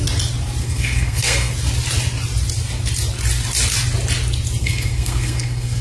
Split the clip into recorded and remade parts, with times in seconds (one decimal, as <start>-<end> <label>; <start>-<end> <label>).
0.0-0.6 recorded; 0.6-1.5 remade; 1.5-4.6 recorded; 4.6-5.8 remade